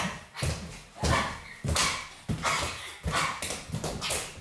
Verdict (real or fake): real